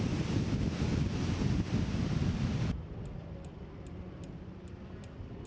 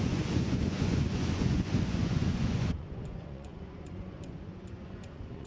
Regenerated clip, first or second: second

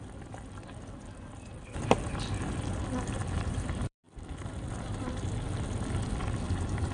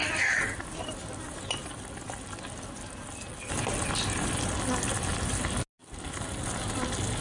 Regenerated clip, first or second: first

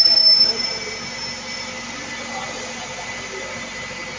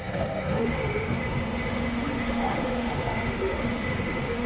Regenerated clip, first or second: second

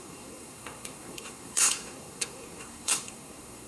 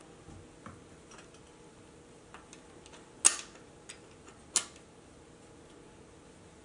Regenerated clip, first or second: first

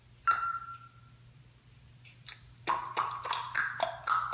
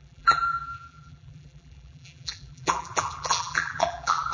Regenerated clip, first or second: second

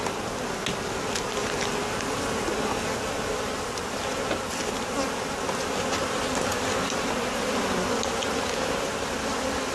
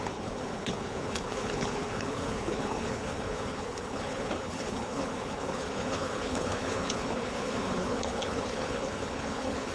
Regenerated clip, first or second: second